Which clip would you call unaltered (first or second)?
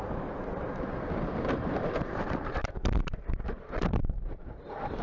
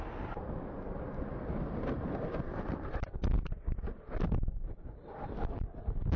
second